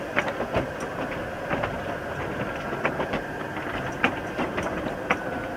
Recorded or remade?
remade